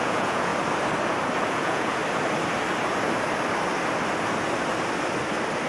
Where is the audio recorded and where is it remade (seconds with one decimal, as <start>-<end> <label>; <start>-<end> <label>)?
0.0-0.5 remade; 0.5-1.5 recorded; 1.5-2.0 remade; 2.0-5.7 recorded